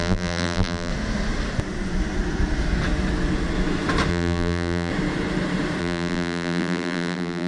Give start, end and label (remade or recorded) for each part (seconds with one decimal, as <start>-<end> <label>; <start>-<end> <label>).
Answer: 0.0-0.9 remade; 0.9-4.1 recorded; 4.1-4.9 remade; 4.9-5.8 recorded; 5.8-7.5 remade